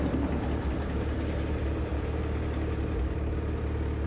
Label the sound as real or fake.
real